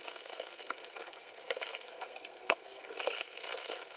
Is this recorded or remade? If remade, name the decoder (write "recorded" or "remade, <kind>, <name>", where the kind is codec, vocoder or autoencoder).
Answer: remade, codec, SNAC